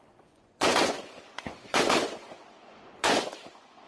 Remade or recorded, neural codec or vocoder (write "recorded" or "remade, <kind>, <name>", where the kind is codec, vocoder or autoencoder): remade, vocoder, Vocos